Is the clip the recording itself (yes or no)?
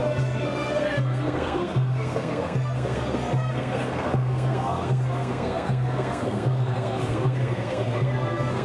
no